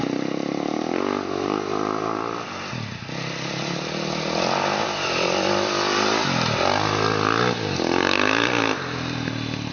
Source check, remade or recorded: recorded